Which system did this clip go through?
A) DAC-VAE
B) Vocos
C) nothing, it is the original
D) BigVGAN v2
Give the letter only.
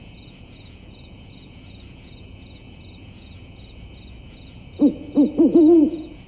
B